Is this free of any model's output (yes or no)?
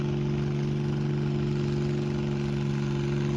yes